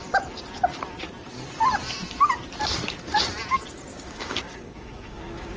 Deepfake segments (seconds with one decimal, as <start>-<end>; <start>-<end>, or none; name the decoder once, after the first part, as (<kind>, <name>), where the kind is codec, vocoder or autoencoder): 3.9-5.6 (codec, DAC)